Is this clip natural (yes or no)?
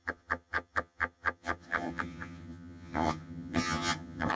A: no